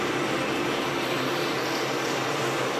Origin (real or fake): real